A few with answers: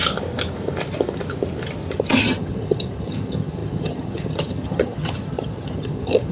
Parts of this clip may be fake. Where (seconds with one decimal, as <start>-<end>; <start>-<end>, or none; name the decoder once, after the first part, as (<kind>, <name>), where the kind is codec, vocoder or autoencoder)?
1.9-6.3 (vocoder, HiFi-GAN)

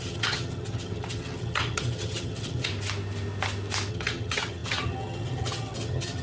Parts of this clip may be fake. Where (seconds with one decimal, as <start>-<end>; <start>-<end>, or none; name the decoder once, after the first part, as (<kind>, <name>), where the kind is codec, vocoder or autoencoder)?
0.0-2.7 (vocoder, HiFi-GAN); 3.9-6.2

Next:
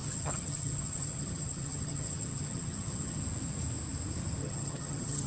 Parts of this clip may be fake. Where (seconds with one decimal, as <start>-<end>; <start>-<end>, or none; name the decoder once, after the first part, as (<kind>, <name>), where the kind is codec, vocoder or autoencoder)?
0.0-3.2 (vocoder, HiFi-GAN); 4.4-5.3

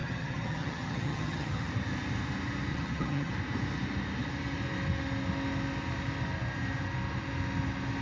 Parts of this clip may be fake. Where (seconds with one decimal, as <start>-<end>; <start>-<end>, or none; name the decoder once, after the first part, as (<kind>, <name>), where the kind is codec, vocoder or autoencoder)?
0.0-1.7 (vocoder, HiFi-GAN); 2.7-3.3

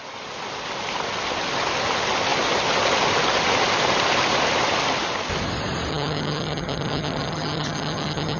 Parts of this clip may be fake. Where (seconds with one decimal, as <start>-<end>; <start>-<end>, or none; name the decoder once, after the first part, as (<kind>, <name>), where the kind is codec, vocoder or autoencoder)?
5.9-8.4 (vocoder, HiFi-GAN)

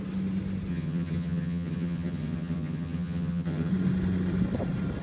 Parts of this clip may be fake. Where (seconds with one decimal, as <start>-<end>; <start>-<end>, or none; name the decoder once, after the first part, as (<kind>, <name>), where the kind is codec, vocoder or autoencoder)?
0.7-3.7 (vocoder, HiFi-GAN)